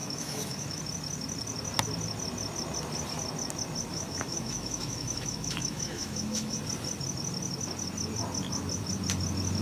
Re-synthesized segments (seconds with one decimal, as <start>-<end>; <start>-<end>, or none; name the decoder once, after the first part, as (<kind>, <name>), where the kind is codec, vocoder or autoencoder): 0.0-0.8 (autoencoder, DAC-VAE); 3.9-6.6